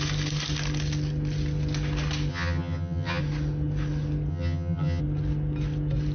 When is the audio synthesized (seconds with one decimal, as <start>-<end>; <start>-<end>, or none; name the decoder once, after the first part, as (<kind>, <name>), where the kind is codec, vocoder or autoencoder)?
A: 2.3-3.2 (vocoder, HiFi-GAN); 4.3-5.0